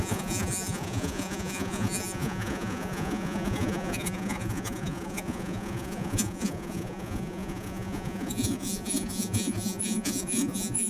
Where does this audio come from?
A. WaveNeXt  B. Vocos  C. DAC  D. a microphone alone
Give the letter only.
B